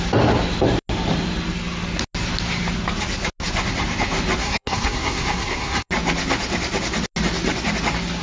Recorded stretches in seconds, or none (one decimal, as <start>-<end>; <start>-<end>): 0.0-4.4; 5.9-8.2